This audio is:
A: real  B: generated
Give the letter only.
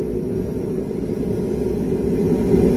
A